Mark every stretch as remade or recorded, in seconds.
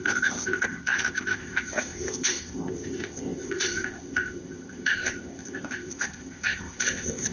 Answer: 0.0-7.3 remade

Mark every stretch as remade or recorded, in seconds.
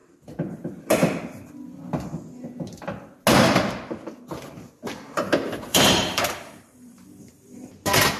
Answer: 0.0-5.7 recorded; 5.7-7.7 remade; 7.7-8.2 recorded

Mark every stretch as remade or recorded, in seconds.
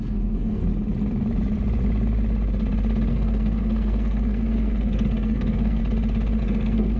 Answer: 0.0-0.6 remade; 0.6-3.1 recorded; 3.1-5.8 remade; 5.8-6.4 recorded; 6.4-7.0 remade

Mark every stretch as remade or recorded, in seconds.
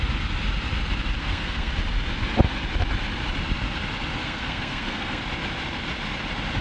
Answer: 0.0-1.2 recorded; 1.2-1.7 remade; 1.7-4.2 recorded; 4.2-5.2 remade; 5.2-6.6 recorded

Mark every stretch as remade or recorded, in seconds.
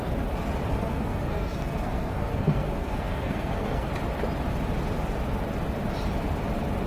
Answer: 0.0-0.7 recorded; 0.7-3.9 remade; 3.9-6.9 recorded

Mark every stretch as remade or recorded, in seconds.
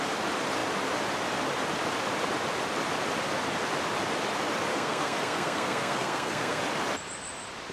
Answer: 0.0-4.7 recorded; 4.7-6.6 remade; 6.6-7.7 recorded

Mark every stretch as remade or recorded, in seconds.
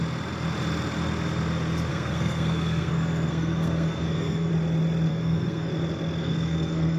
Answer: 0.0-1.9 recorded; 1.9-4.5 remade; 4.5-5.1 recorded; 5.1-5.7 remade; 5.7-6.2 recorded; 6.2-7.0 remade